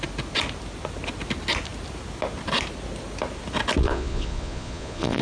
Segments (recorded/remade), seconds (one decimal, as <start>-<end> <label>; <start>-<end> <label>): 0.0-3.8 recorded; 3.8-5.2 remade